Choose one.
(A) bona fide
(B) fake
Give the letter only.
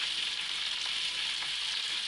A